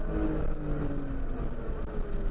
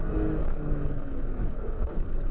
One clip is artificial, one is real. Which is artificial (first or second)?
second